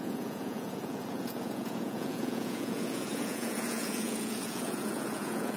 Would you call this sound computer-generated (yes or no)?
yes